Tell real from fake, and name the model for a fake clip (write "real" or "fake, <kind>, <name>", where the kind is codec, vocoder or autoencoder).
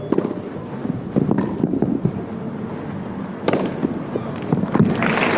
real